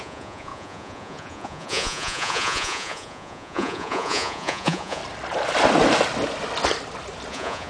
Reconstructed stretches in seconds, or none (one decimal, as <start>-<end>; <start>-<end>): 0.0-5.0; 7.3-7.7